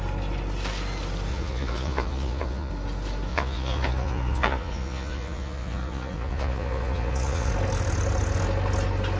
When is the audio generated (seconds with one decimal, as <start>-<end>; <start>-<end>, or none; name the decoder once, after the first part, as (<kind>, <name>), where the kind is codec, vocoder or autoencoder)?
1.3-2.7 (vocoder, Vocos); 3.3-7.5